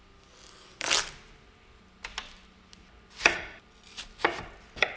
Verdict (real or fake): real